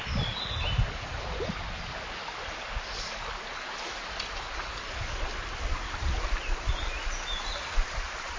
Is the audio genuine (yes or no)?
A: yes